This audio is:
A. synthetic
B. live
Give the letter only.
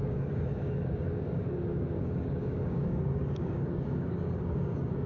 A